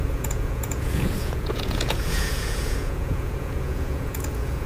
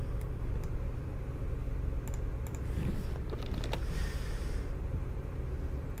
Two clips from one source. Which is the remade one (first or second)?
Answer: first